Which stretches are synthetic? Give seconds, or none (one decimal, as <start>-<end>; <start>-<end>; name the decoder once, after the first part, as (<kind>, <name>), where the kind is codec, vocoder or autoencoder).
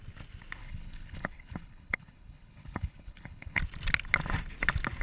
0.6-3.6 (codec, HILCodec)